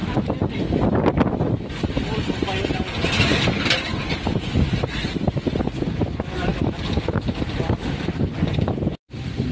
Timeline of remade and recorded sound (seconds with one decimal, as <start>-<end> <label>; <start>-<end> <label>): 0.0-9.5 recorded